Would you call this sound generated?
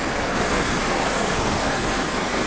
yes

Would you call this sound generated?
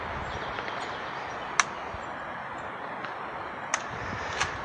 no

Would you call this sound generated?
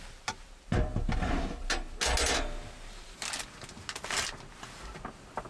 no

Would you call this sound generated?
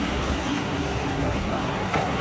yes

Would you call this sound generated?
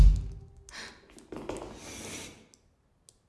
no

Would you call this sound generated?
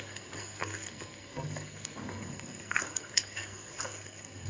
yes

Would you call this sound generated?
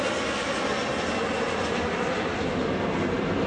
no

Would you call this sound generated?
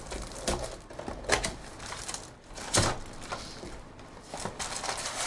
no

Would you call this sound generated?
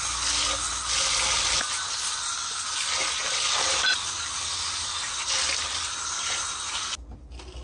no